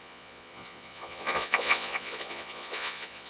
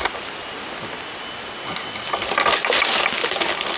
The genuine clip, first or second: second